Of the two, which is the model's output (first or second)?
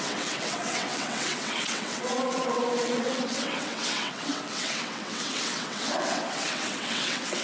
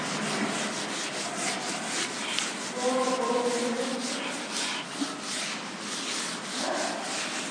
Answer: first